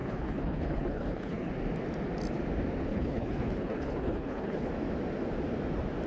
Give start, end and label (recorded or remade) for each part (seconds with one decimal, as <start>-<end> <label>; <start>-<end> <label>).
0.0-1.5 remade; 1.5-2.9 recorded; 2.9-4.7 remade; 4.7-6.1 recorded